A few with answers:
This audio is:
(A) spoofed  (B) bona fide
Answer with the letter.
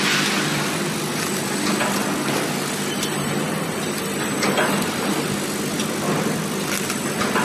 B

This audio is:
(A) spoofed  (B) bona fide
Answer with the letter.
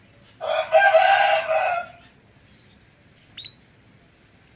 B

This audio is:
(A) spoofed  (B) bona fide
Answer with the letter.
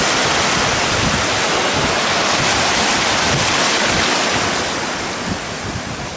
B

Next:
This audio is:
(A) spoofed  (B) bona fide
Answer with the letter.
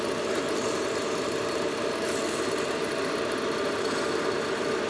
B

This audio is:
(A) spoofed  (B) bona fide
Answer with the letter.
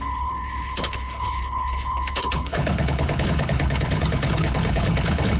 A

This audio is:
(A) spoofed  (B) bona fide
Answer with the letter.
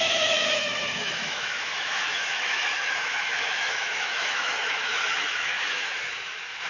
A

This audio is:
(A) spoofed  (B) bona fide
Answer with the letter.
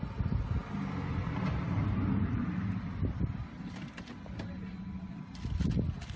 B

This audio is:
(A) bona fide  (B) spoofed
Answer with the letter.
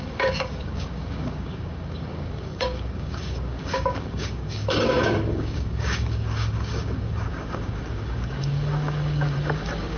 B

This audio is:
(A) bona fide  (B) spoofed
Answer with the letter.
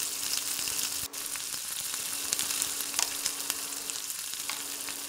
A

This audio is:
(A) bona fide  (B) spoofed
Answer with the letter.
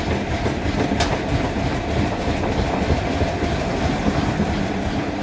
B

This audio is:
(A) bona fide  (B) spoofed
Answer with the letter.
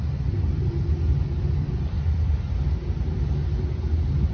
A